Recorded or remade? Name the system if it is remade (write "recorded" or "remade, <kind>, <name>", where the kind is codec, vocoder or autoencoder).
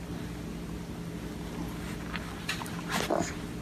recorded